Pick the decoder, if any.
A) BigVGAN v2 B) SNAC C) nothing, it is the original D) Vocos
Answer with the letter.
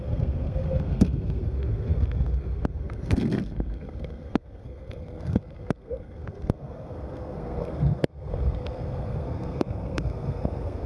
B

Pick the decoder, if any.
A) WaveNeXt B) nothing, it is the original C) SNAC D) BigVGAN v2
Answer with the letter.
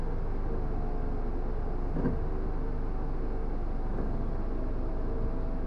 B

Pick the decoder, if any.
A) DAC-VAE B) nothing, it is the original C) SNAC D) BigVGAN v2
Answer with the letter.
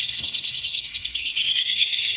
C